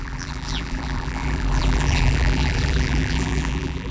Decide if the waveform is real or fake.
fake